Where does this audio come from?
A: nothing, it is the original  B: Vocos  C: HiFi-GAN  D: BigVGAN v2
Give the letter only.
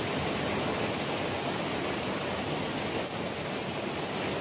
A